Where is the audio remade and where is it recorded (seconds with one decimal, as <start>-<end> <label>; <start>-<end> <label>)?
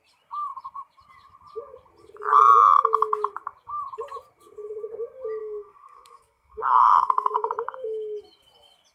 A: 0.0-5.4 recorded; 5.4-7.5 remade; 7.5-8.9 recorded